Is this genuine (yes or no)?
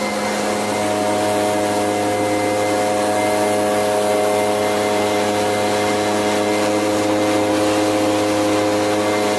yes